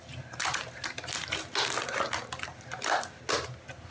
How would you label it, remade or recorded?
recorded